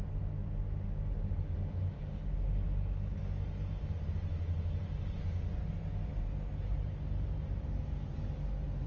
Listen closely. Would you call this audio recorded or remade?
recorded